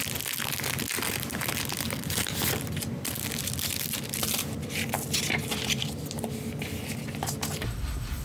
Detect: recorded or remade recorded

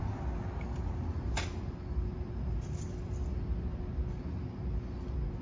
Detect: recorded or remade recorded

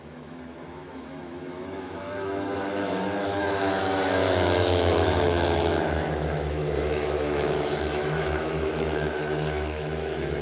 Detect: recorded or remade remade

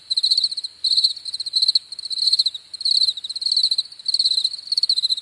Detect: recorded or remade recorded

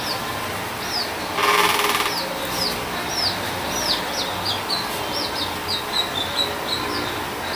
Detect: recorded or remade recorded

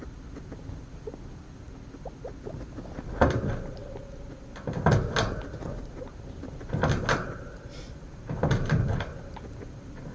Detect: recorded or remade recorded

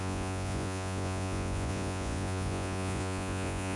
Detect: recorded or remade remade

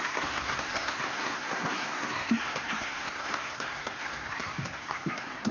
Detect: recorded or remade remade